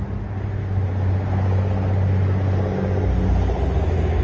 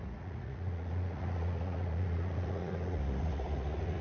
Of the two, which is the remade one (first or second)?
second